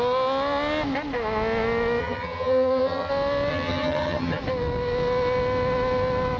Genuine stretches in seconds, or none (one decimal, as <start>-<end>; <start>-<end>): 0.0-2.0; 3.1-3.5; 4.4-6.4